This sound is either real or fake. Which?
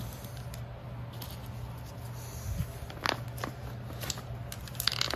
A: real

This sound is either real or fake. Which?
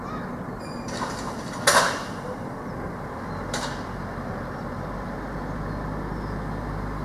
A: real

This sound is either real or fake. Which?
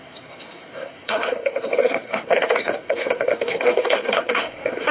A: fake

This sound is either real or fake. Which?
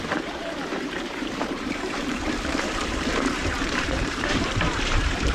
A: fake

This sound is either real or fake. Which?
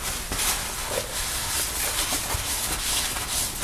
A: real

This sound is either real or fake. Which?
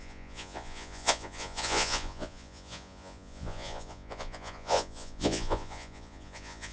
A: fake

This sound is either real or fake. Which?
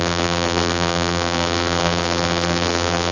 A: fake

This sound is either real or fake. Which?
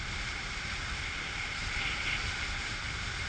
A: fake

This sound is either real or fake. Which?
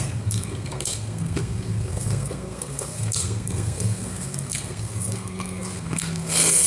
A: fake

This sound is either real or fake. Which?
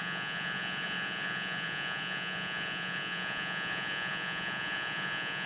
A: fake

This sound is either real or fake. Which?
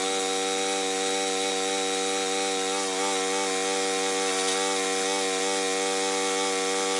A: real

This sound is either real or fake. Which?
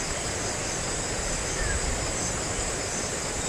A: fake